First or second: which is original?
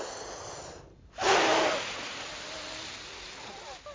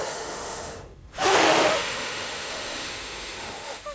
first